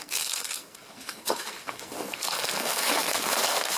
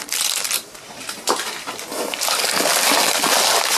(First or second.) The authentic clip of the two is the second